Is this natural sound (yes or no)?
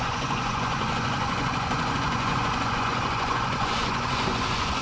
no